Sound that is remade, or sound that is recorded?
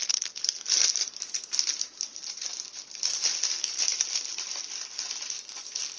recorded